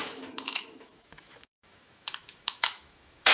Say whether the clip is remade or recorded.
remade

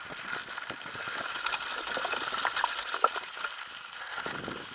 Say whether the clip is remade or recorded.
recorded